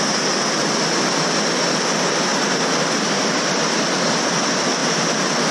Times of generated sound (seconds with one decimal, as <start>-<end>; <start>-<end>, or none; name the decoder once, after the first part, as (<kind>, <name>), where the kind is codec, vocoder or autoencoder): none

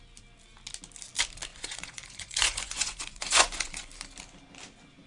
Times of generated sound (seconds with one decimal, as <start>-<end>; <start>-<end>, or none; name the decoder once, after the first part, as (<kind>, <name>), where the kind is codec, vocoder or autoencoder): 1.5-3.9 (vocoder, Vocos)

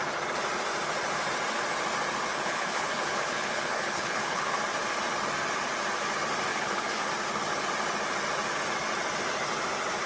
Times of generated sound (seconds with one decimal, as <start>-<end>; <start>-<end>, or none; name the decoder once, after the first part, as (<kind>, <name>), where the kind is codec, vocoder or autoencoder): 2.3-4.6 (codec, HILCodec); 6.5-7.1

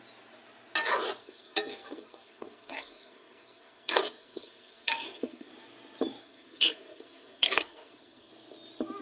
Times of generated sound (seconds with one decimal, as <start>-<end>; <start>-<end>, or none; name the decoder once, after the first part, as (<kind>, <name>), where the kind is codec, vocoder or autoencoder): 1.2-5.5 (codec, SNAC); 6.2-8.3

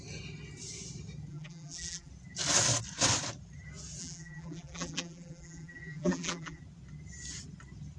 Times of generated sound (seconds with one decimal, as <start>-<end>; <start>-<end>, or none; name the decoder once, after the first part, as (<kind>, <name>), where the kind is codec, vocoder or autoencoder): 1.3-2.1 (vocoder, BigVGAN v2); 4.0-6.6

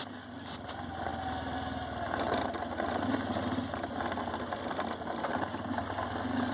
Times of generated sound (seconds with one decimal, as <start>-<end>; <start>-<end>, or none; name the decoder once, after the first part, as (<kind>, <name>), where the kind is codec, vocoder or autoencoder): none